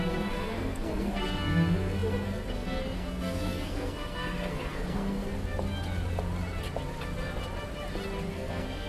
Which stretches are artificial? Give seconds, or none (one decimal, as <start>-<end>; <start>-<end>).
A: 0.0-5.3; 8.3-8.9